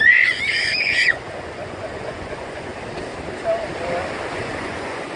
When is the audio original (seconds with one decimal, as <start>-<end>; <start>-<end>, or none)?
2.7-4.3